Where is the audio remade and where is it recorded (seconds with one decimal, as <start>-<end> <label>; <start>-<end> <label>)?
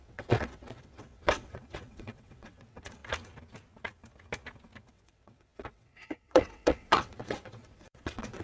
0.0-3.0 remade; 3.0-4.8 recorded; 4.8-8.4 remade